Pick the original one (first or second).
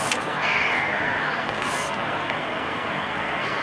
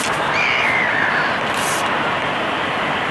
second